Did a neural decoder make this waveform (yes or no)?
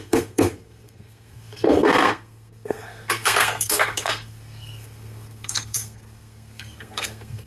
yes